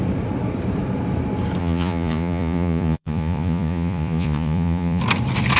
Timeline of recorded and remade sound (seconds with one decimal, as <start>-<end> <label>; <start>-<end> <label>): 0.0-1.6 recorded; 1.6-5.0 remade; 5.0-5.6 recorded